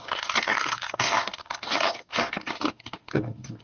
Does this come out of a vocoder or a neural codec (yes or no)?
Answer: yes